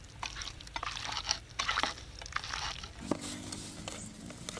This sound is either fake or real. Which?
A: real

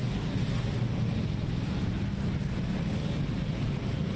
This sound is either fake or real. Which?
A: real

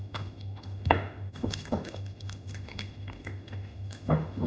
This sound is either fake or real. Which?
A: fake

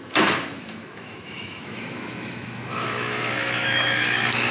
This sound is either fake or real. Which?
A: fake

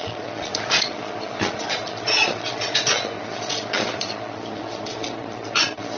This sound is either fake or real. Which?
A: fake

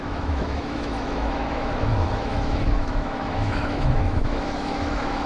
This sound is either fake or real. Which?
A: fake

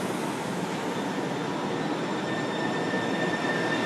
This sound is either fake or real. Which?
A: real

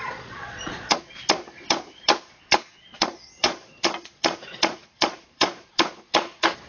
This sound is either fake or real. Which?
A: fake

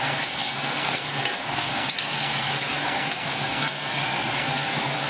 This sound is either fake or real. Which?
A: fake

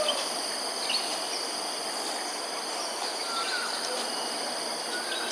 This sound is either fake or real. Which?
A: real